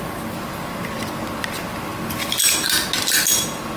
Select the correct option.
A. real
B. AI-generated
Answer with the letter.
A